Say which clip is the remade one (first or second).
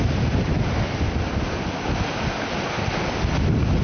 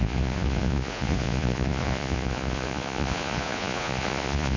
second